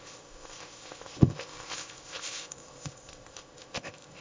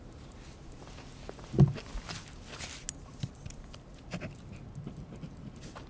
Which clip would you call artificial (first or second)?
first